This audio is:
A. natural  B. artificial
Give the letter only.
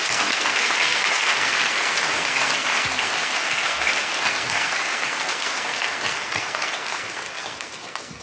B